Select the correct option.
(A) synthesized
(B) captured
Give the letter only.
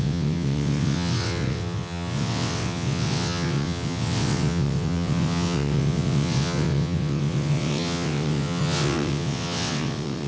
A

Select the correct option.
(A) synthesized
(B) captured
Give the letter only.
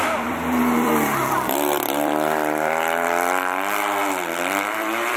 A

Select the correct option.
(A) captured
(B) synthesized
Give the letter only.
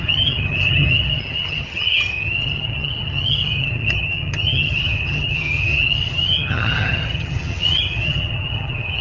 B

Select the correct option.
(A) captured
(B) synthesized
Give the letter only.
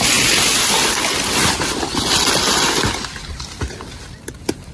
A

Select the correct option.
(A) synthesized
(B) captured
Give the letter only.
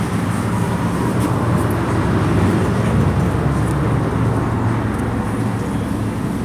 B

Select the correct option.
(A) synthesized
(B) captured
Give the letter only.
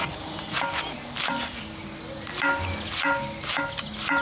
B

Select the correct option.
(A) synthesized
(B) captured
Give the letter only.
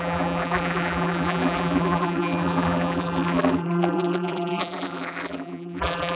A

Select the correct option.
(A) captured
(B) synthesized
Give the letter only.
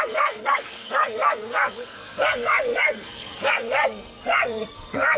B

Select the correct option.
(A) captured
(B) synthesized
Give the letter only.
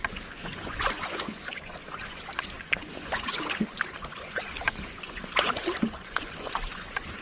B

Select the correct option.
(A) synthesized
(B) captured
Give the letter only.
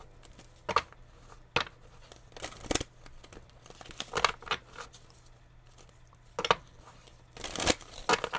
B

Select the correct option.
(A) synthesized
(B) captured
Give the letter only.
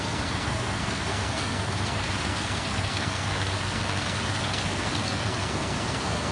A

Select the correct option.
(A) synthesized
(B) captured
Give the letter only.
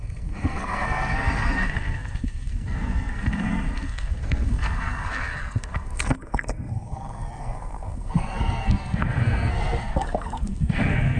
A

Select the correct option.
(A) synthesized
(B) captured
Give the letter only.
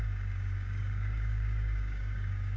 A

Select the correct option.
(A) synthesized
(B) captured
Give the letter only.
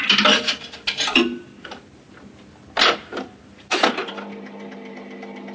B